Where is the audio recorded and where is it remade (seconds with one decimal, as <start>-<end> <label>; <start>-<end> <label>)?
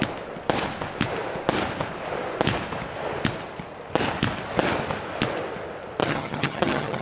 0.0-6.0 recorded; 6.0-7.0 remade